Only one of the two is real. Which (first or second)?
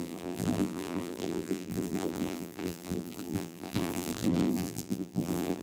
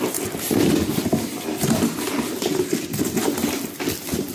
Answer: second